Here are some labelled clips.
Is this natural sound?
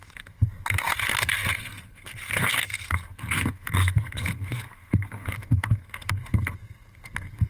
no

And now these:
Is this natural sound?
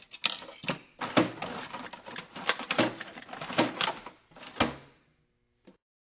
yes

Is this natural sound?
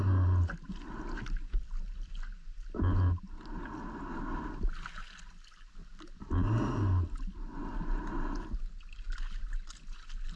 yes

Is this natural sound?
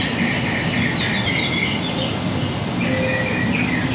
yes